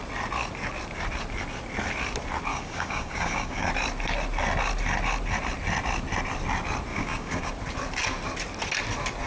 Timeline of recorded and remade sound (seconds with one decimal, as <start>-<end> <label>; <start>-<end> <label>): 0.0-2.5 recorded; 2.5-3.7 remade; 3.7-6.9 recorded; 6.9-7.5 remade; 7.5-9.3 recorded